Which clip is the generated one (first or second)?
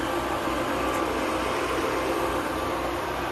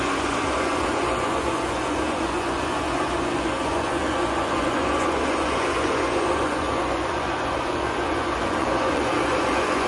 second